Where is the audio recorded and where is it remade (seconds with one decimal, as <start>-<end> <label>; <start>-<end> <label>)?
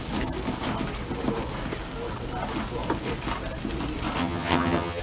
0.0-4.2 recorded; 4.2-5.0 remade